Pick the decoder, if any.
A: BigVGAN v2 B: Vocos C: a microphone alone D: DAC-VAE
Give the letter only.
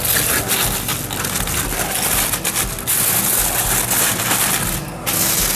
C